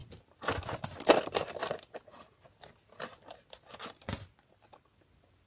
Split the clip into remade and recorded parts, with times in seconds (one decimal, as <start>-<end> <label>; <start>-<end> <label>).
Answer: 0.0-5.5 recorded